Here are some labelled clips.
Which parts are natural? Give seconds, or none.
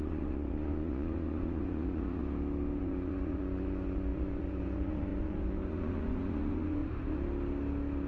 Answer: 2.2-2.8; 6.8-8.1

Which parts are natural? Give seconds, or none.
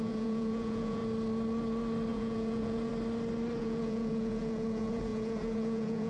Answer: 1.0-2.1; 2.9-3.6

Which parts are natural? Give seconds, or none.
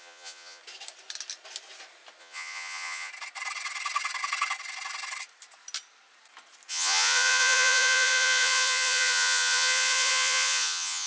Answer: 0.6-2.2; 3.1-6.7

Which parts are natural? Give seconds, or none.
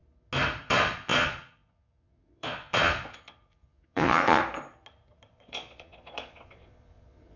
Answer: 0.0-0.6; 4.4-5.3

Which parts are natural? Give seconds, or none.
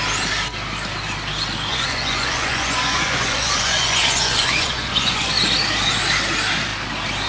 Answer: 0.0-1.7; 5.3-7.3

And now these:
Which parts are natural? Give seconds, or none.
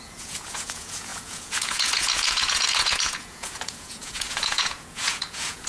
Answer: none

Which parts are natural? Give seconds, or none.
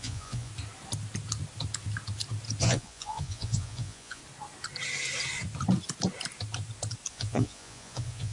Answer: 0.5-2.6; 4.2-7.1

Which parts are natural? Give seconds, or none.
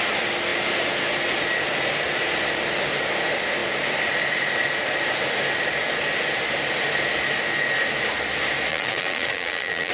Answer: 0.0-8.7